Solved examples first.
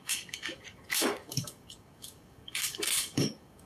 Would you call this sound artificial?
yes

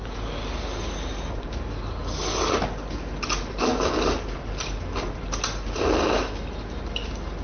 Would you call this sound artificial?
no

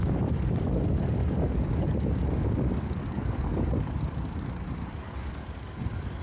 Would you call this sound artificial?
yes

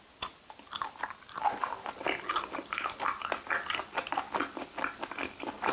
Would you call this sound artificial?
no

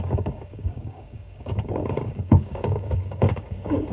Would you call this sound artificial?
yes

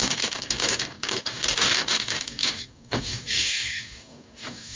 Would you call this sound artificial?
yes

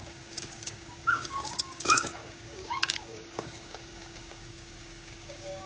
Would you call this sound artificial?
yes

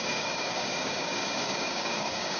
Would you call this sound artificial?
yes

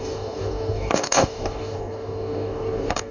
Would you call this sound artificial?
yes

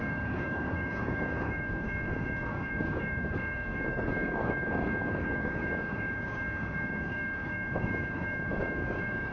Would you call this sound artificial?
yes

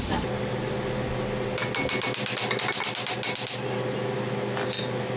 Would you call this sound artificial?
no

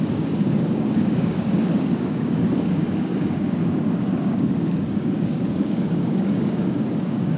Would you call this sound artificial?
yes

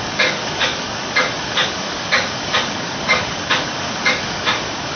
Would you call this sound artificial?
yes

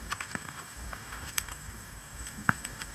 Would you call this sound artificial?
yes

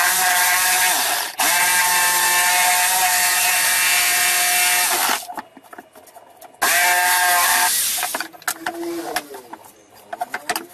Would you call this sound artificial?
no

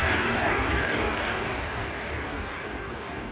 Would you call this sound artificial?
yes